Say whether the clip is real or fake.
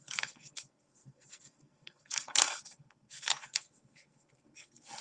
fake